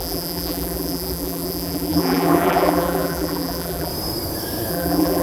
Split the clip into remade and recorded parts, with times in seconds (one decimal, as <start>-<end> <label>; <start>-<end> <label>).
0.0-3.9 remade; 3.9-4.7 recorded; 4.7-5.2 remade